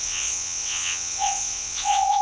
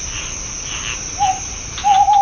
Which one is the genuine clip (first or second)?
second